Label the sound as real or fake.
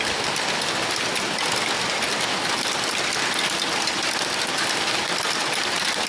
real